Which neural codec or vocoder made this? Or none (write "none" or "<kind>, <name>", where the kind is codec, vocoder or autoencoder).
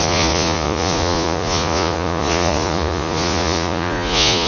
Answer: vocoder, Vocos